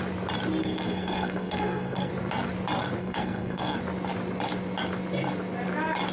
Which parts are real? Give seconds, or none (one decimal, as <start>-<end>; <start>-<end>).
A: 0.0-0.6; 2.1-3.0; 3.8-6.1